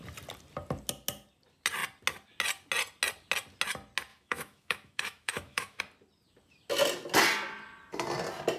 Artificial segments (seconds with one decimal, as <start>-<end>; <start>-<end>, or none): 4.1-5.8